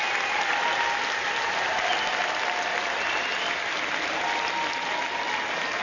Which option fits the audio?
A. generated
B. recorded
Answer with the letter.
B